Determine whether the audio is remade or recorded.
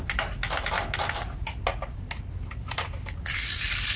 recorded